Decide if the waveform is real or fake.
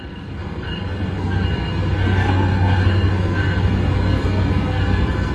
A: fake